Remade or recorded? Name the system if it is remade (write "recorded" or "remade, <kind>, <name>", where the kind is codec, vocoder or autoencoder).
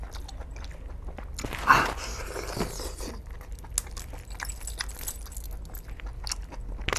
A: recorded